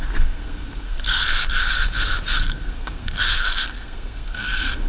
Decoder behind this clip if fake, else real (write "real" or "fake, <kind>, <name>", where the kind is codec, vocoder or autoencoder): fake, codec, SNAC